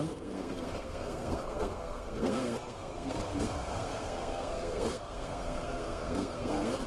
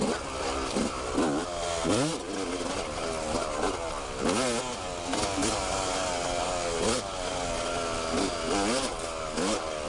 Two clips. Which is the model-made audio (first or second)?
first